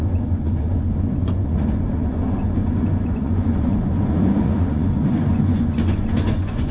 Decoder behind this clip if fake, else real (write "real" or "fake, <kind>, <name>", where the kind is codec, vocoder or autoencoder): fake, vocoder, Vocos